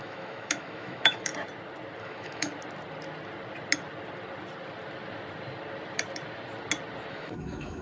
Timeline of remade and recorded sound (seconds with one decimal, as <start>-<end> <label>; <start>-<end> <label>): 0.0-1.3 remade; 1.3-2.0 recorded; 2.0-2.5 remade; 2.5-7.1 recorded; 7.1-7.8 remade